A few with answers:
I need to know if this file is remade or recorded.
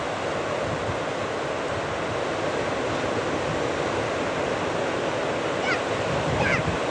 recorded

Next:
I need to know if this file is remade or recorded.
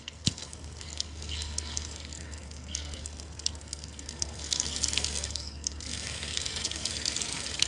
remade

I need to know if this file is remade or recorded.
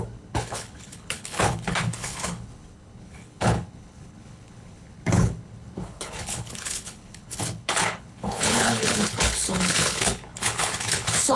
remade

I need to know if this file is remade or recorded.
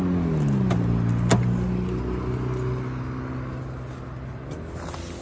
recorded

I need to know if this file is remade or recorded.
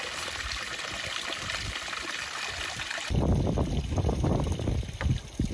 recorded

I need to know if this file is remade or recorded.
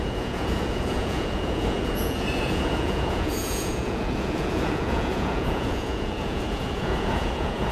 remade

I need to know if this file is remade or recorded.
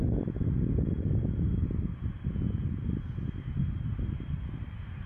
recorded